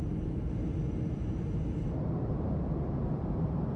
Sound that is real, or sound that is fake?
fake